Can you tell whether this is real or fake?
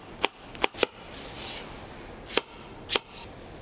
real